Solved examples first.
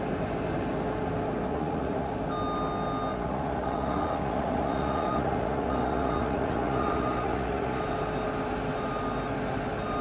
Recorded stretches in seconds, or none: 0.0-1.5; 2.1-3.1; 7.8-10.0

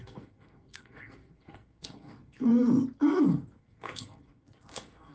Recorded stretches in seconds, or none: 2.5-3.0

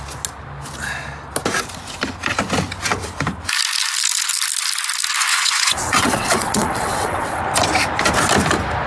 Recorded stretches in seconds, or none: 0.0-5.3; 7.4-8.9

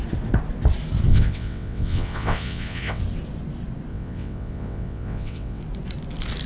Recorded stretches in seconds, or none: 0.0-1.1; 3.0-3.9; 5.6-6.5

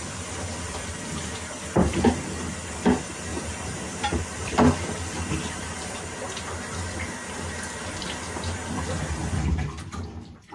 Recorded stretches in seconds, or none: 0.0-3.3; 6.0-10.5

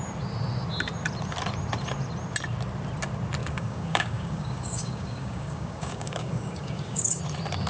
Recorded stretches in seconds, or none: 0.0-3.4; 7.2-7.7